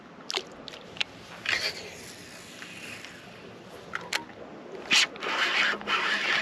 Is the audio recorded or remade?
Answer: recorded